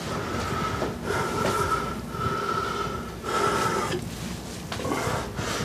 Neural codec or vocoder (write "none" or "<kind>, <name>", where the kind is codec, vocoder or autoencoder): none